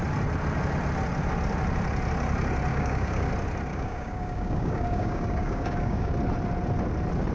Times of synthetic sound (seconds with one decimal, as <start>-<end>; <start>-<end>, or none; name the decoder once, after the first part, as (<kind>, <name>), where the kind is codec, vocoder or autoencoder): 2.7-3.3 (codec, DAC); 3.7-6.1